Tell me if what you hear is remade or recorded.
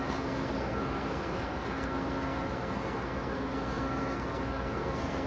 remade